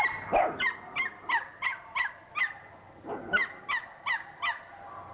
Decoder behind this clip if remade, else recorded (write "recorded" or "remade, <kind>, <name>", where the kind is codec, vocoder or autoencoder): recorded